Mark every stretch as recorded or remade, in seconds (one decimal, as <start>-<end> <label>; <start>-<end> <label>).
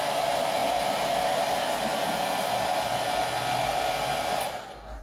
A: 0.0-5.0 recorded